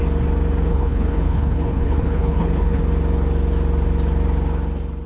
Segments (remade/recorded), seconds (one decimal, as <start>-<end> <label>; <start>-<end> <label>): 0.0-0.7 recorded; 0.7-2.8 remade; 2.8-5.1 recorded